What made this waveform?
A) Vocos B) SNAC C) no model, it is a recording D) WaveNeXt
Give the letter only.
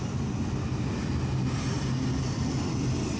C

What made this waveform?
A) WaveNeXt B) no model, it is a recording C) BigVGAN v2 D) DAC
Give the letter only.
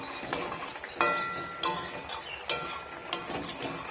B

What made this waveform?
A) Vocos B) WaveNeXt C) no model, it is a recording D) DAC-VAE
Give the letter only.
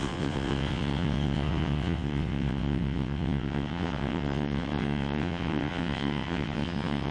B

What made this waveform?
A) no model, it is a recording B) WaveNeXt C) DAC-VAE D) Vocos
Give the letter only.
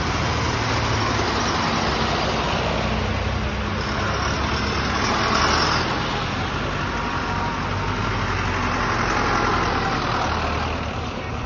A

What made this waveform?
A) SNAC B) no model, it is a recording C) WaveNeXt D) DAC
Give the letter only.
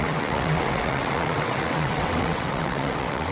C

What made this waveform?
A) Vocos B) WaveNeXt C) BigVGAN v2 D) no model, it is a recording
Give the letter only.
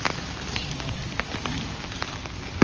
D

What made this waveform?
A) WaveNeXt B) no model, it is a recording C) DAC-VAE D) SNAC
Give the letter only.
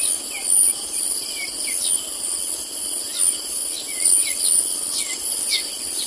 B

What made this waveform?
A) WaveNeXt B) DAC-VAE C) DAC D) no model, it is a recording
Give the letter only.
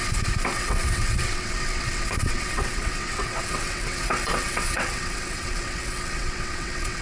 A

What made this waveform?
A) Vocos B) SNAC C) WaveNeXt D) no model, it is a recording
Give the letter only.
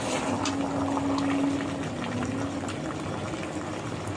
D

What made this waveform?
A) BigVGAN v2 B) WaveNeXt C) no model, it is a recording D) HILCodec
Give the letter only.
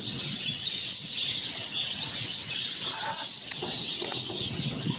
B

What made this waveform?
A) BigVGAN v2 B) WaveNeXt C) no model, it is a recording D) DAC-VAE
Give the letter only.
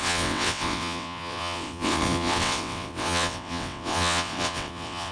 B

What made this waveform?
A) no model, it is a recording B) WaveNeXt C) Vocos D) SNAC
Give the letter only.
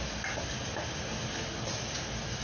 A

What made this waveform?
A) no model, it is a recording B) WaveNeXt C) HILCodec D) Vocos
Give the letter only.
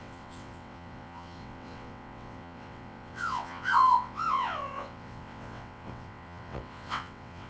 B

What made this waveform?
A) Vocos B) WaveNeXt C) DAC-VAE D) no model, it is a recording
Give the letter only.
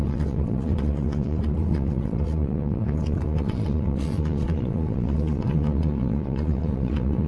B